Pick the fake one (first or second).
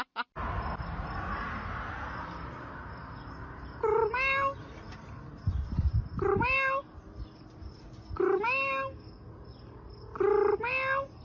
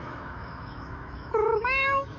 second